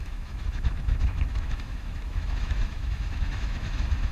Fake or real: fake